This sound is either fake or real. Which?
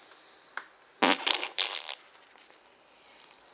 real